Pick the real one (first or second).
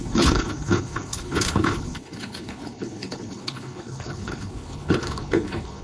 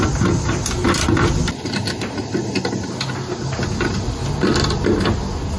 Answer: second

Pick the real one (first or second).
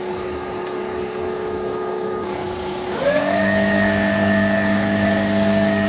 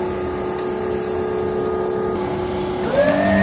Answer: second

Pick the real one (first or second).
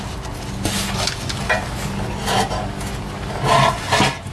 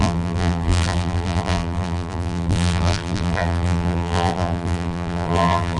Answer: first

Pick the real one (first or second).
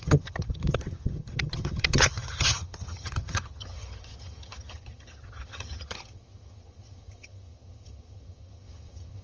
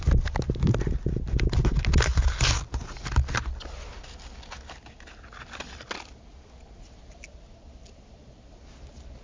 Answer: second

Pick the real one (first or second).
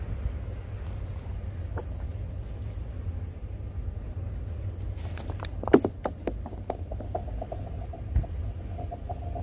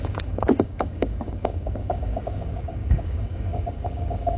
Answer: first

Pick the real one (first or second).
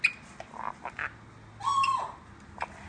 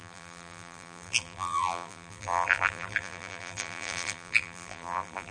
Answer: first